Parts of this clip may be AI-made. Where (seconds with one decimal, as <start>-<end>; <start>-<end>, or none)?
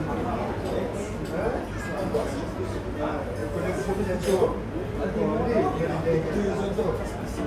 none